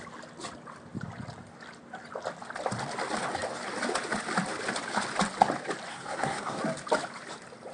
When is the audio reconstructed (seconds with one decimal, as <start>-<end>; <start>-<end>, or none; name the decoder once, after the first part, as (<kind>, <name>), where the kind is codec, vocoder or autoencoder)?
5.9-6.6 (codec, SNAC)